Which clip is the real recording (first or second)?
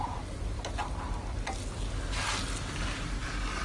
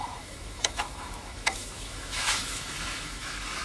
first